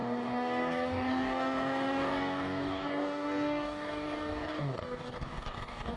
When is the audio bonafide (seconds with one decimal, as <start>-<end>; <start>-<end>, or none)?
none